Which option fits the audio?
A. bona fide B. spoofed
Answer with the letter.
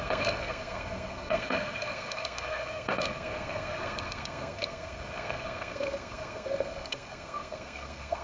B